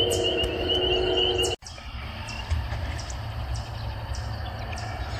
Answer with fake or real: real